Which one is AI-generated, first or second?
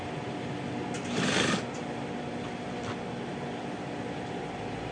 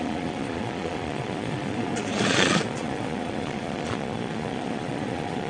second